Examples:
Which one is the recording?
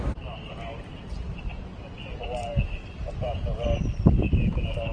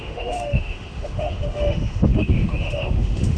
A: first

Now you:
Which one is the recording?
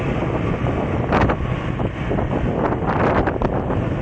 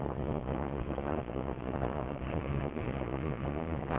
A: first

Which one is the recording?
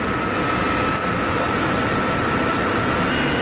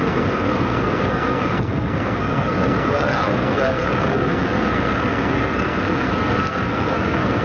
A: first